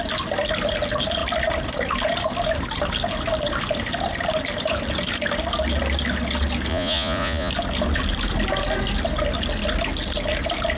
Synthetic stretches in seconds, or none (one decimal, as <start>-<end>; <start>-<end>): 6.7-7.5